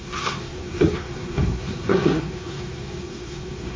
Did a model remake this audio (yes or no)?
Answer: yes